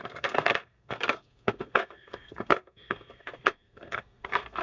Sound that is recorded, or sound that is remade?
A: remade